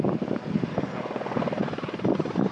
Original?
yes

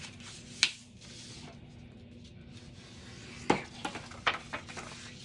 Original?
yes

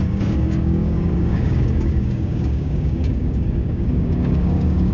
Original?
no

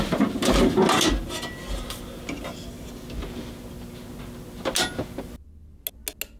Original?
yes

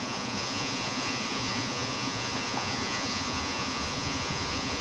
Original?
no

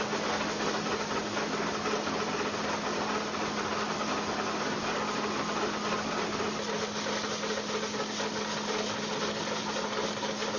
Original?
yes